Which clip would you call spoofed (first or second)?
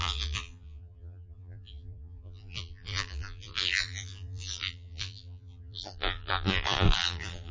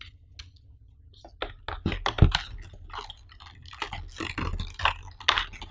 first